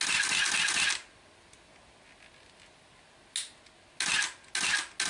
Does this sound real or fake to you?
real